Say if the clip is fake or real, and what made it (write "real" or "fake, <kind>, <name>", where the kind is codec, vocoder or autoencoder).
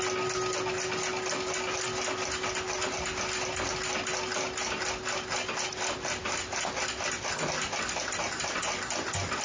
real